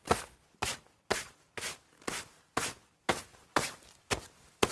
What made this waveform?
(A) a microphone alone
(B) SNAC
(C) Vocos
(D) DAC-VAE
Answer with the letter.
A